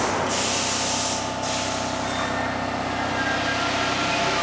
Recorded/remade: recorded